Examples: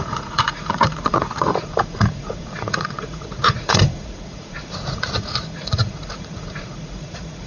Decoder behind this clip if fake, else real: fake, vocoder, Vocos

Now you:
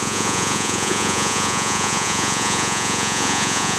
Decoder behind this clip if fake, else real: fake, vocoder, Vocos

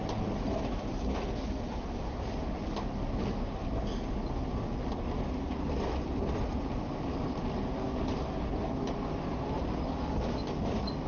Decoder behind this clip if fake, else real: real